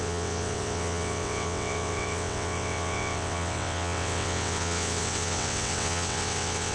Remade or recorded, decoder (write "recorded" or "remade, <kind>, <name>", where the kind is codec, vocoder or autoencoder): remade, vocoder, WaveNeXt